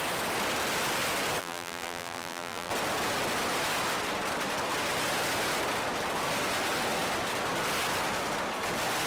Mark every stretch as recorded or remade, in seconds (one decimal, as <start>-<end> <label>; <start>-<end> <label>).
0.0-1.4 recorded; 1.4-2.7 remade; 2.7-9.1 recorded